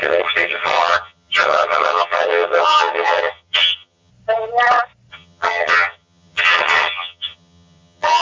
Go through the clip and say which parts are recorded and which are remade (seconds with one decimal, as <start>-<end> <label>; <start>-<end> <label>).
0.0-4.1 remade; 4.1-5.1 recorded; 5.1-8.2 remade